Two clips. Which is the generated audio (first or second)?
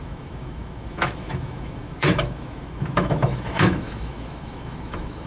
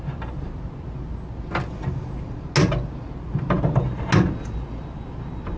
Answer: first